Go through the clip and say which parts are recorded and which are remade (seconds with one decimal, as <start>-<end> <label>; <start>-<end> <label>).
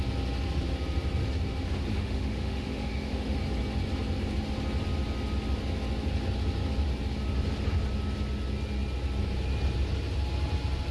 0.0-1.9 recorded; 1.9-3.4 remade; 3.4-10.9 recorded